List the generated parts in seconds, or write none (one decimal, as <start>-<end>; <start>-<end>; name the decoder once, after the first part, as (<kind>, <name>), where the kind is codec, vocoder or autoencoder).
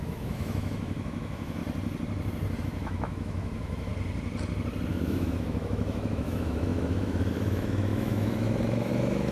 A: 0.0-1.6 (autoencoder, DAC-VAE); 2.6-3.9; 4.9-9.3